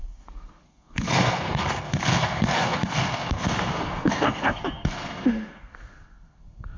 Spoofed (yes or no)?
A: yes